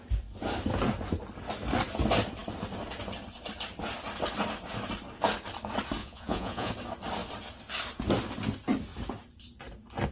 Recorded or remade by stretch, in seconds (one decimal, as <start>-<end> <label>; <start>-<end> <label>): 0.0-6.0 recorded; 6.0-6.7 remade; 6.7-10.1 recorded